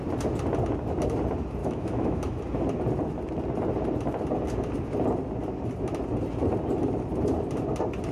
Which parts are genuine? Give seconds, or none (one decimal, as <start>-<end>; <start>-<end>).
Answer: 0.0-1.6; 2.4-8.1